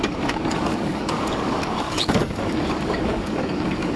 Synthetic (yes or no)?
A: yes